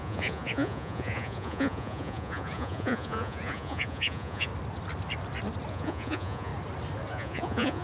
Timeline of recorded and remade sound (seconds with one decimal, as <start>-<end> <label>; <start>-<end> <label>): 0.0-4.5 remade; 4.5-5.7 recorded; 5.7-6.5 remade; 6.5-7.1 recorded; 7.1-7.8 remade

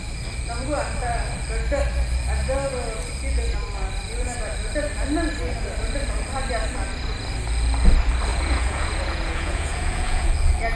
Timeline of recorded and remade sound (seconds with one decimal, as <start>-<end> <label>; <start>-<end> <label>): 0.0-8.3 recorded; 8.3-10.3 remade; 10.3-10.8 recorded

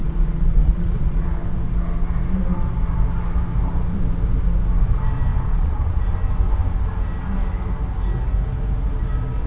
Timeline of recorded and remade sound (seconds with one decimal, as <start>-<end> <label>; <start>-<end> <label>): 0.0-1.4 remade; 1.4-5.3 recorded; 5.3-6.0 remade; 6.0-9.5 recorded

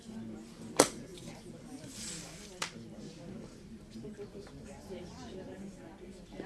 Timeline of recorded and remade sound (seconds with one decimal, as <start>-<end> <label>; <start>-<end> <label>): 0.0-6.5 recorded

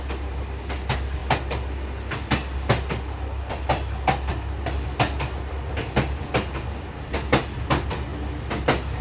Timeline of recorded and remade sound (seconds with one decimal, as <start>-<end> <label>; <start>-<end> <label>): 0.0-9.0 recorded

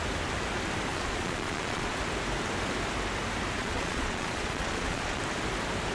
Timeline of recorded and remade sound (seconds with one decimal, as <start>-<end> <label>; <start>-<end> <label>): 0.0-0.9 recorded; 0.9-2.0 remade; 2.0-3.6 recorded; 3.6-5.2 remade; 5.2-5.9 recorded